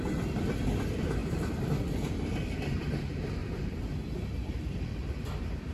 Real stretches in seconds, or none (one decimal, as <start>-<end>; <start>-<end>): 3.4-4.6